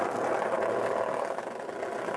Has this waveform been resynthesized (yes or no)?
no